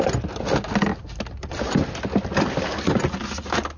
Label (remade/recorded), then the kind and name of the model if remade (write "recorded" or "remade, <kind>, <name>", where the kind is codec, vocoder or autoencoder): recorded